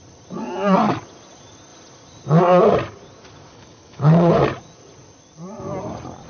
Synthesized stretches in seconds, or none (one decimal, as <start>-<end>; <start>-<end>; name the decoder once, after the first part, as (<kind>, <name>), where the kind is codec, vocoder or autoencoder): 3.5-4.4 (codec, HILCodec)